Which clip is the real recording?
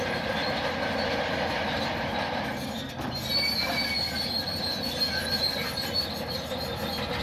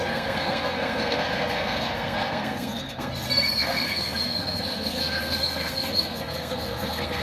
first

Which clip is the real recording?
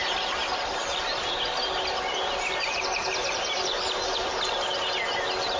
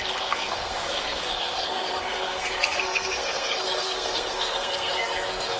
first